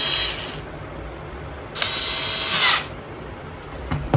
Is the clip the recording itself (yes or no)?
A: yes